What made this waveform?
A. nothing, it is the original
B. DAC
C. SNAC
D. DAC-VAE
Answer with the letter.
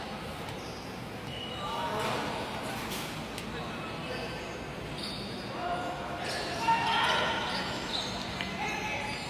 A